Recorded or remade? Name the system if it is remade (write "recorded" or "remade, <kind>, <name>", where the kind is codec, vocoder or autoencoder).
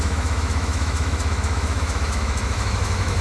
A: remade, autoencoder, DAC-VAE